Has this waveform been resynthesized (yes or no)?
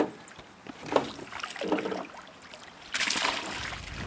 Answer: no